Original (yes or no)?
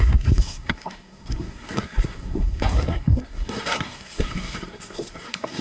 no